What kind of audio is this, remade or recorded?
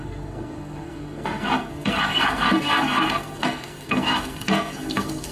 remade